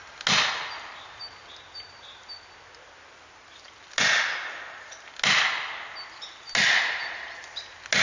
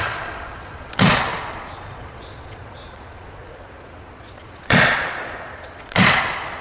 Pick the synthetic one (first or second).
second